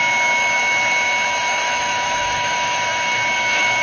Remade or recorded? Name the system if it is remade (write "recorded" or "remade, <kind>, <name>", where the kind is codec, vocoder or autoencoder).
remade, autoencoder, DAC-VAE